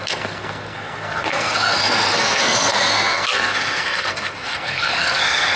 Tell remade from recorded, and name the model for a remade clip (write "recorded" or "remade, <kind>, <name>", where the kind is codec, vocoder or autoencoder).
remade, codec, SNAC